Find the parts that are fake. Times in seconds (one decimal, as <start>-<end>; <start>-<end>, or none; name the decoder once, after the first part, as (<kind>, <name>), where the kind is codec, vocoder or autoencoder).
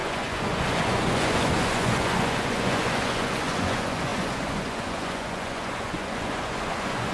0.0-7.1 (vocoder, Vocos)